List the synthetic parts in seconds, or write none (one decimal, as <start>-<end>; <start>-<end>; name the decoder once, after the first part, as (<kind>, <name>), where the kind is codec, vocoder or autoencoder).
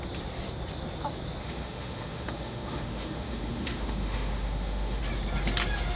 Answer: 1.4-5.0 (autoencoder, DAC-VAE)